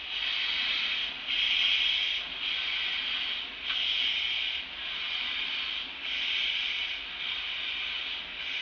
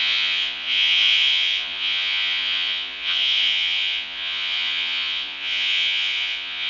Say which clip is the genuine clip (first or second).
first